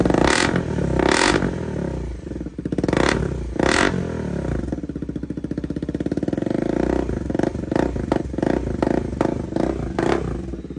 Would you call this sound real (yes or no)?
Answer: yes